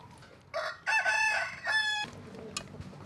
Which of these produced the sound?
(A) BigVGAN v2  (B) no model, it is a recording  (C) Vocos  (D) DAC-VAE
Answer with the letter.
B